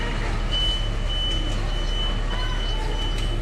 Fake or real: real